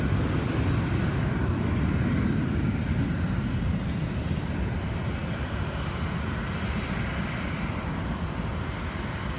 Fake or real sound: real